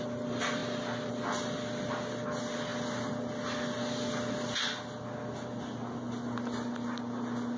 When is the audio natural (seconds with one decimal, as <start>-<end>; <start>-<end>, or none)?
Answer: 0.0-7.6